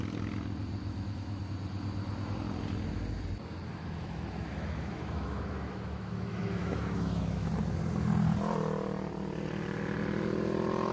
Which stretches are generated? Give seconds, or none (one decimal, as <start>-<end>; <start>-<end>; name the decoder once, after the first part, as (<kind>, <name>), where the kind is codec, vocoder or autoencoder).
0.8-1.4 (autoencoder, DAC-VAE); 3.7-7.5